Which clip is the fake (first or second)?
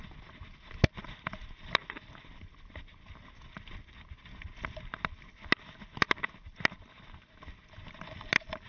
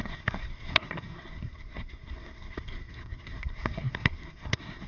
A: second